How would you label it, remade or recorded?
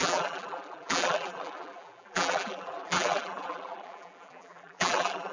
remade